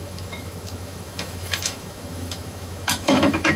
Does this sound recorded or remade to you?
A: remade